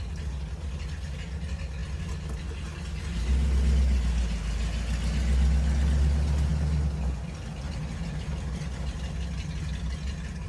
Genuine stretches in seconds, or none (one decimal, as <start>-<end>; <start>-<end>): 0.0-10.5